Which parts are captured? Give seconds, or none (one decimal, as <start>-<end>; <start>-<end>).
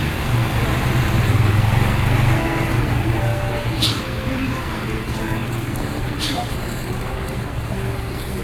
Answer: 0.6-1.3